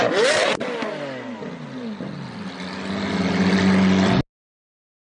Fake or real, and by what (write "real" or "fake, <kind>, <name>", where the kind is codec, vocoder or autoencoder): real